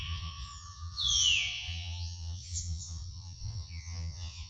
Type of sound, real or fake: fake